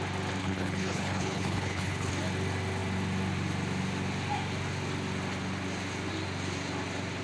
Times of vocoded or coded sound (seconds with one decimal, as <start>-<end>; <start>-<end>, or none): 0.4-2.1